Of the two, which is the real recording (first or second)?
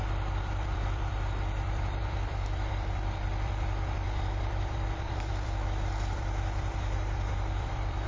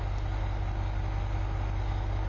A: second